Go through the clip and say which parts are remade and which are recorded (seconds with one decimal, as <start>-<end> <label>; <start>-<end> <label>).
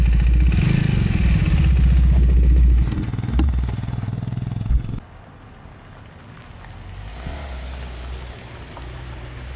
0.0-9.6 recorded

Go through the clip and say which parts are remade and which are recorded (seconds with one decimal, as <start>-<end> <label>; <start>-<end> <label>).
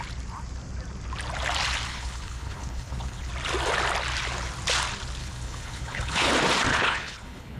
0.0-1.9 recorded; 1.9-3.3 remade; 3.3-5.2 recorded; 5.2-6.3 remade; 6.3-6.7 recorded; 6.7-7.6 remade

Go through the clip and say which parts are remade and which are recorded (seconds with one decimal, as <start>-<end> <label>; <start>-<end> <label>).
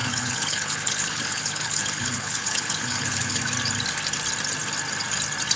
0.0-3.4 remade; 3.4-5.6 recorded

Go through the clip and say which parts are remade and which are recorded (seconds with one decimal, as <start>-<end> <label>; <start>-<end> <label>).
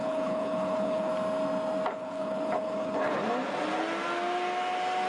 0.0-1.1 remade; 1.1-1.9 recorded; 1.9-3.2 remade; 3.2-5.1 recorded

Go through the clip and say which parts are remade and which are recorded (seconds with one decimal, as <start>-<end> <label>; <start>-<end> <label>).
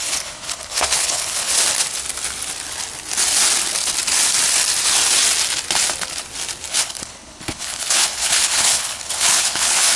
0.0-1.5 remade; 1.5-6.7 recorded; 6.7-10.0 remade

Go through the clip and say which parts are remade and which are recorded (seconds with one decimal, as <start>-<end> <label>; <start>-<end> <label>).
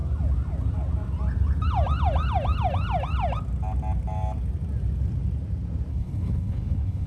0.0-5.9 recorded; 5.9-7.1 remade